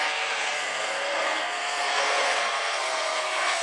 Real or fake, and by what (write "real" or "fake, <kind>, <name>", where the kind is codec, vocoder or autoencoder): fake, codec, SNAC